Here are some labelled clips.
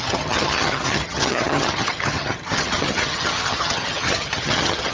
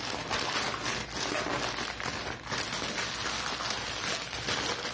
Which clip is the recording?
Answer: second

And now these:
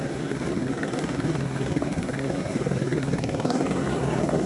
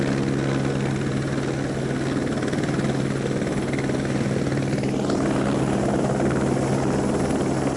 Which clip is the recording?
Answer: second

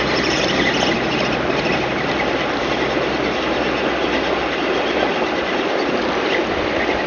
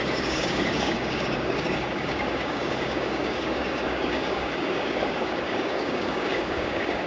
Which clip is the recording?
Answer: first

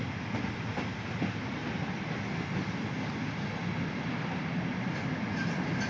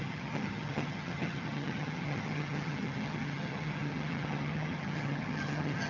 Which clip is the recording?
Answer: first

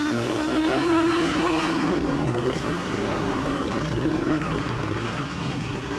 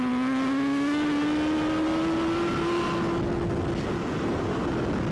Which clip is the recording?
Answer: second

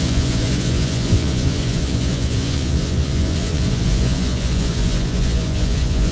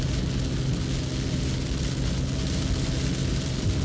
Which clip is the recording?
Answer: second